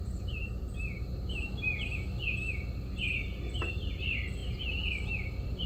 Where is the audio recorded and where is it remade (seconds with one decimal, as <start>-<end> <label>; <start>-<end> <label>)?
0.0-0.4 remade; 0.4-3.8 recorded; 3.8-4.4 remade; 4.4-5.1 recorded; 5.1-5.7 remade